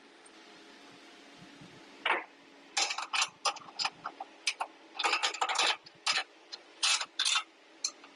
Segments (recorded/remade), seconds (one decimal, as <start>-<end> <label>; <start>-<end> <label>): 0.0-6.2 recorded; 6.2-7.2 remade; 7.2-8.2 recorded